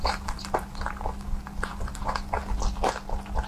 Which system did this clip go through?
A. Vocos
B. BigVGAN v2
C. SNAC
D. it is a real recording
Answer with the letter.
D